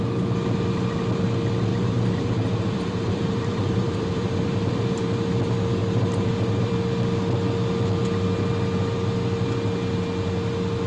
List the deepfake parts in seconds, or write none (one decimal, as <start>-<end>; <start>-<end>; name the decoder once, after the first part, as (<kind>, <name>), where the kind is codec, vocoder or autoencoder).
1.7-5.1 (vocoder, BigVGAN v2); 5.8-6.7